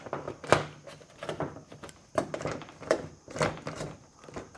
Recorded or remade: recorded